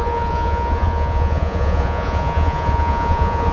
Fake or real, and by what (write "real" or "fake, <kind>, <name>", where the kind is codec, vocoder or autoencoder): fake, vocoder, Vocos